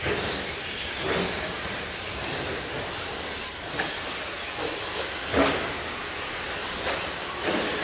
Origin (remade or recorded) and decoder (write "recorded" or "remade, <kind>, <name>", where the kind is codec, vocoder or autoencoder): recorded